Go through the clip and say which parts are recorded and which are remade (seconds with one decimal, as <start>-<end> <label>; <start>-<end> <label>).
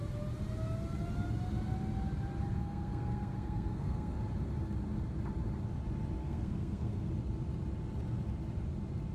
0.0-2.6 recorded; 2.6-4.2 remade; 4.2-6.2 recorded; 6.2-7.1 remade; 7.1-9.1 recorded